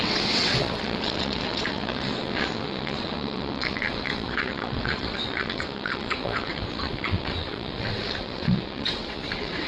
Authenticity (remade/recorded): remade